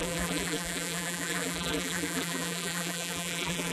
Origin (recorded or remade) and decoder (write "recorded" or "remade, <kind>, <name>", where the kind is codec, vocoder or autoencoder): remade, vocoder, BigVGAN v2